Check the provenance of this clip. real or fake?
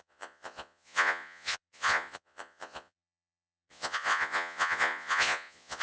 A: fake